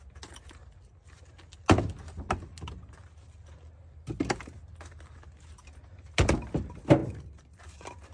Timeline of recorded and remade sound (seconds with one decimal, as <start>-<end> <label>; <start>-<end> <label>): 0.0-8.1 recorded